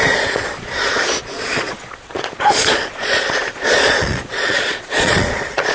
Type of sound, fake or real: fake